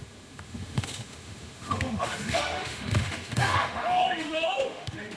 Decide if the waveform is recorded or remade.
remade